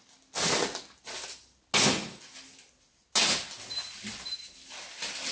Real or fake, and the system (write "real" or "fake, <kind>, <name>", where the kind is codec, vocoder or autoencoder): real